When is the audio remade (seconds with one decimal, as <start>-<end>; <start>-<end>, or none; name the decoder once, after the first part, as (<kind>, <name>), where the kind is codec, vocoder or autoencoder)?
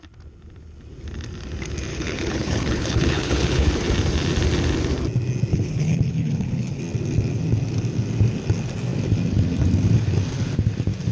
1.9-3.7 (codec, HILCodec); 5.5-6.8